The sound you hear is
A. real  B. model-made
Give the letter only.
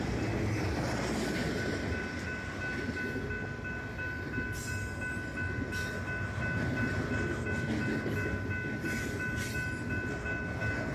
A